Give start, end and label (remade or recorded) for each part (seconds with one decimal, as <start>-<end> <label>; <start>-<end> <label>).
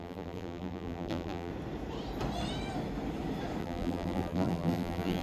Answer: 0.0-1.5 remade; 1.5-3.6 recorded; 3.6-5.2 remade